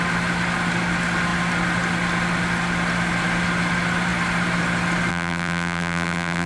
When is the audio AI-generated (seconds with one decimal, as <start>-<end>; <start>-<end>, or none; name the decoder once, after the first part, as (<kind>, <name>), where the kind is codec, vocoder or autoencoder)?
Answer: 5.1-6.5 (vocoder, BigVGAN v2)